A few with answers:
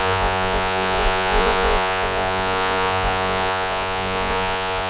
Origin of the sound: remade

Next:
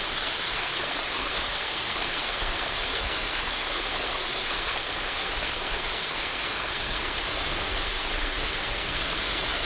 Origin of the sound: remade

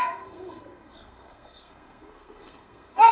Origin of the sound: remade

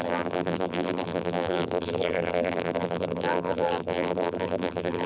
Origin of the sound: remade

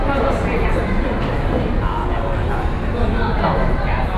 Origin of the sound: recorded